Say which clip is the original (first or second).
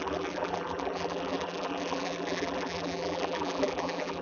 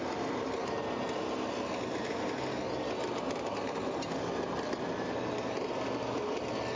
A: second